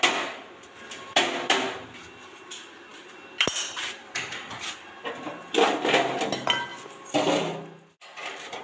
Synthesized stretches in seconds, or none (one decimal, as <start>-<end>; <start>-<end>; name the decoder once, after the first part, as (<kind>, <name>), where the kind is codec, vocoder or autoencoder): none